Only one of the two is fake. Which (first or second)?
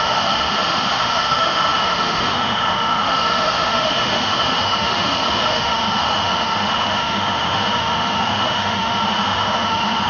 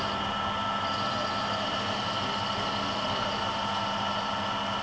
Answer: first